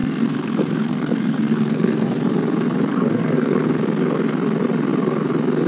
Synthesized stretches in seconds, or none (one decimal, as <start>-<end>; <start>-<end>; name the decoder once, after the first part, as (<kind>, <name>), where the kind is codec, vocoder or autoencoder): 0.0-2.1 (codec, SNAC); 2.9-3.7